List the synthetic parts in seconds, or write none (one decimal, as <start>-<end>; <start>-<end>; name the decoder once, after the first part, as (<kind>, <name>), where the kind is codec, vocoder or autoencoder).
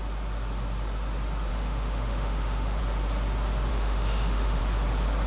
1.5-2.8 (autoencoder, DAC-VAE); 3.7-4.6